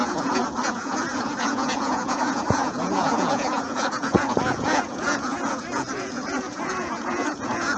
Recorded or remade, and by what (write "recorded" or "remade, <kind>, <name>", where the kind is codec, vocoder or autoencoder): remade, vocoder, Vocos